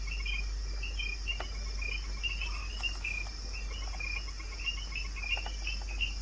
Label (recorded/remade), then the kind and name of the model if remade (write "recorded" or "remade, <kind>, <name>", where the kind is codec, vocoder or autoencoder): recorded